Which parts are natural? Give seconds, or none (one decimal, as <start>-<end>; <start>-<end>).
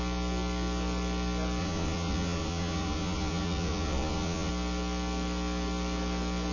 0.0-1.6; 4.5-6.5